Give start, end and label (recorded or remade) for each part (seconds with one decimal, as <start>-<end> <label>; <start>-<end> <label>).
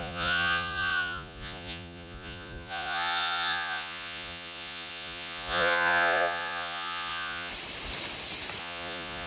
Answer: 0.0-7.5 remade; 7.5-8.6 recorded; 8.6-9.3 remade